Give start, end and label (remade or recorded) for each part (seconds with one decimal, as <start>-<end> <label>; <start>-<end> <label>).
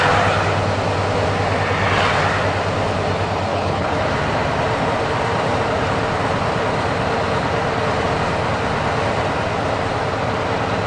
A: 0.0-3.5 recorded; 3.5-4.0 remade; 4.0-10.9 recorded